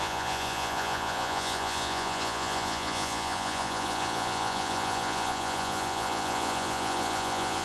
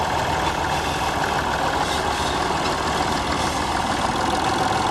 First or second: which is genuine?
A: second